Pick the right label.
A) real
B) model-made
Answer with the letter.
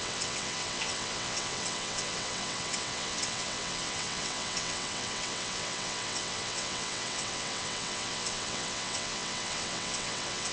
B